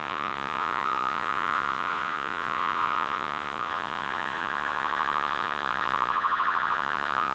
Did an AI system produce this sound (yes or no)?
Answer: yes